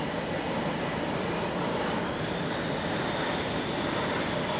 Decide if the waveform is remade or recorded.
recorded